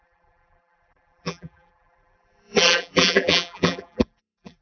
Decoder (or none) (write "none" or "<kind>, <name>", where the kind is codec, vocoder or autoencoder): vocoder, BigVGAN v2